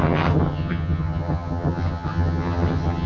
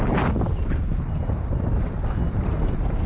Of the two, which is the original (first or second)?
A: second